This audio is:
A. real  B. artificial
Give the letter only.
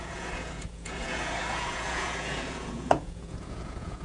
B